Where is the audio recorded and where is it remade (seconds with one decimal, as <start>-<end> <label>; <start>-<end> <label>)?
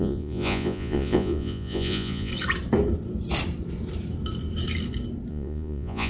0.0-2.3 remade; 2.3-5.3 recorded; 5.3-6.1 remade